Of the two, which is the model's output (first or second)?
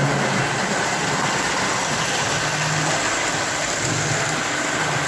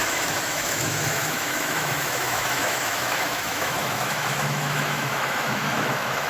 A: second